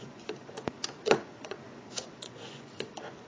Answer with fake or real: fake